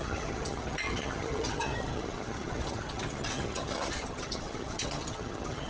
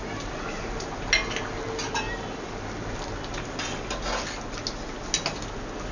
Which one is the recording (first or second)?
second